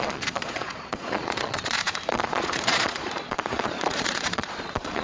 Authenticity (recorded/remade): remade